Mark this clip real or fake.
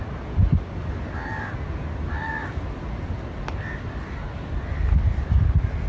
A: real